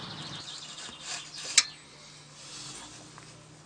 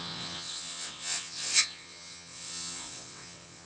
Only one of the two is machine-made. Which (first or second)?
second